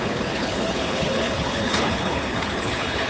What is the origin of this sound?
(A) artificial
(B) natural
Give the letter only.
A